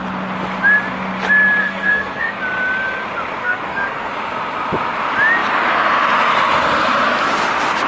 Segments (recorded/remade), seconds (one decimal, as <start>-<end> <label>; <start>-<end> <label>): 0.0-1.6 recorded; 1.6-2.4 remade; 2.4-3.4 recorded; 3.4-4.1 remade; 4.1-7.9 recorded